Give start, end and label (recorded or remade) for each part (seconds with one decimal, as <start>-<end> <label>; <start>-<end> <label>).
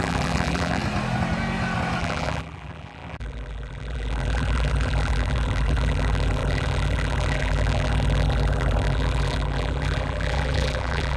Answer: 0.0-0.8 remade; 0.8-2.0 recorded; 2.0-11.2 remade